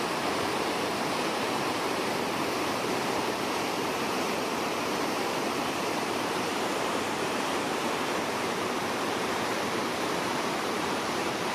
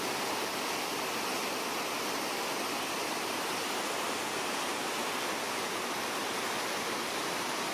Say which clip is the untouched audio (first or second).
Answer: second